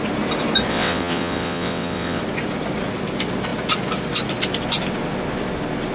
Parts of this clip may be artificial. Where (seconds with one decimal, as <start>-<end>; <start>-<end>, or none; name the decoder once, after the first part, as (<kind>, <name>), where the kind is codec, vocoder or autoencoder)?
0.7-2.2 (vocoder, WaveNeXt)